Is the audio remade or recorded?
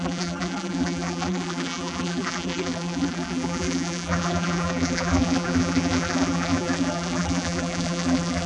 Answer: remade